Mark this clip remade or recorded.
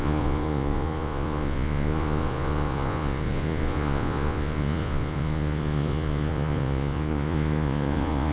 remade